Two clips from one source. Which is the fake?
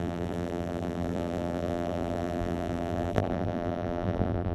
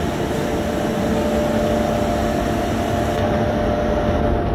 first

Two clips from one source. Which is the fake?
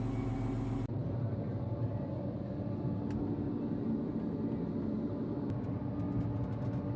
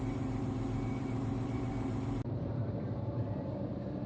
second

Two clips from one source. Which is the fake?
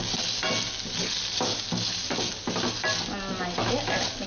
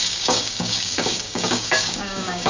second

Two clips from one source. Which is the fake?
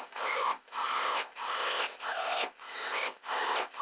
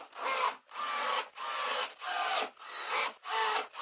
first